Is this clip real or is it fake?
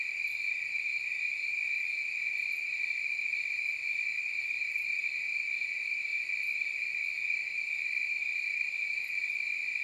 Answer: real